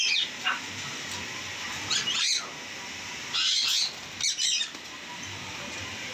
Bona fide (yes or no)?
yes